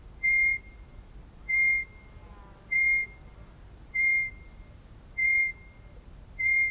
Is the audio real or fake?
real